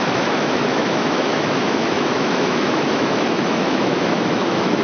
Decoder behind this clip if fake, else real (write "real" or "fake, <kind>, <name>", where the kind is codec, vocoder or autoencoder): fake, autoencoder, DAC-VAE